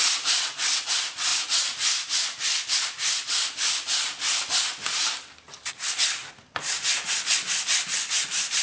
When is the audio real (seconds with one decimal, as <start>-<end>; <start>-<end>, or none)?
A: 0.0-8.6